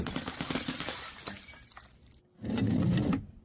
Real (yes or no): yes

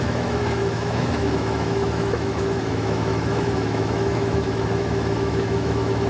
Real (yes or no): no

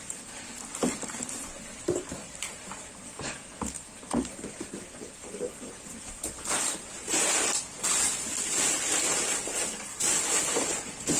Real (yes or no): no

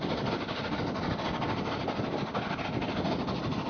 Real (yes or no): yes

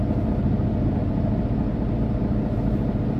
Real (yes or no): yes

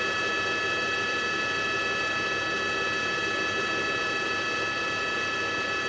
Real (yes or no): yes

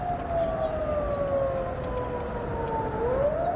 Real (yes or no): yes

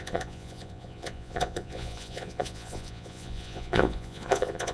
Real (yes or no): no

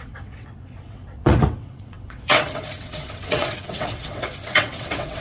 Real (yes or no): no